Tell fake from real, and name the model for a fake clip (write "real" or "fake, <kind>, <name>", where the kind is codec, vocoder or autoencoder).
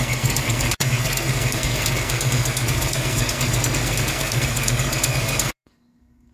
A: fake, codec, SNAC